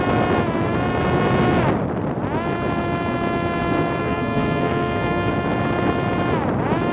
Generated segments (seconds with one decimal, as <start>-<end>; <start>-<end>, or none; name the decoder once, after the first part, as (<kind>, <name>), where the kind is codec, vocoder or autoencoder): 4.0-5.3 (codec, SNAC)